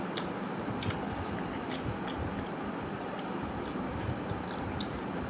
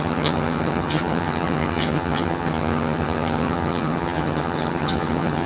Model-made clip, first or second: second